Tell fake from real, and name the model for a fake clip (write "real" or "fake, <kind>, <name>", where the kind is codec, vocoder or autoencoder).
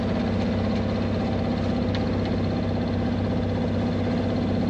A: real